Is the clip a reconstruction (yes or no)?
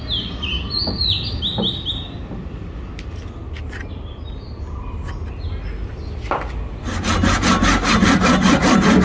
no